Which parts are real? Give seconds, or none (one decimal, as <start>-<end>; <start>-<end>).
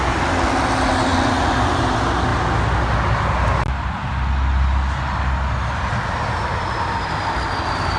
0.0-8.0